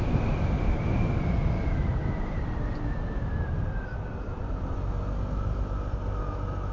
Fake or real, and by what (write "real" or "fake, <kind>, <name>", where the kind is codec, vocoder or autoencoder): real